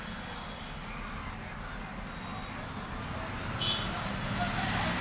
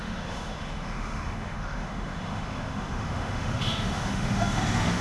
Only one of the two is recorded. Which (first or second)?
first